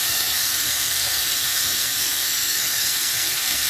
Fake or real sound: fake